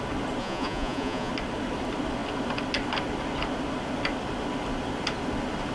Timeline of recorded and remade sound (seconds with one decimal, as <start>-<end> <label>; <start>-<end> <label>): 0.0-0.4 recorded; 0.4-1.3 remade; 1.3-5.7 recorded